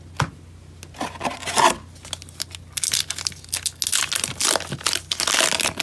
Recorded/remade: recorded